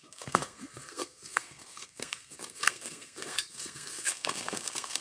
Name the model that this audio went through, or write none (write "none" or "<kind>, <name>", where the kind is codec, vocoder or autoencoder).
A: codec, SNAC